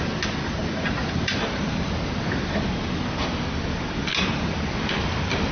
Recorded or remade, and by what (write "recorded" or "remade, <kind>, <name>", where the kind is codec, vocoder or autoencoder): recorded